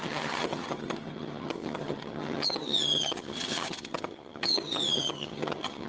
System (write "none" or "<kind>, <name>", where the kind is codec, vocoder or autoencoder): vocoder, HiFi-GAN